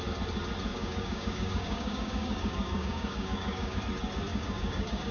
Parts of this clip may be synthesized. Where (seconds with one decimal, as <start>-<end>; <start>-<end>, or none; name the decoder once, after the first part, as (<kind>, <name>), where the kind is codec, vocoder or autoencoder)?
0.7-3.8 (codec, DAC); 4.3-5.1